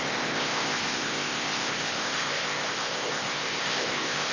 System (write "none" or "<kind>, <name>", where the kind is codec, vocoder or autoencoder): codec, ZipCodec